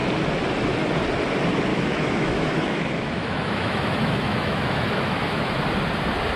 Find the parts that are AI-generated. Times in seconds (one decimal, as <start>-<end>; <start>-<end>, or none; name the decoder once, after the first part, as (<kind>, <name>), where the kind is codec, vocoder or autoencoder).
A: 1.7-5.5 (autoencoder, DAC-VAE)